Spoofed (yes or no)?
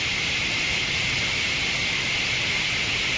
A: no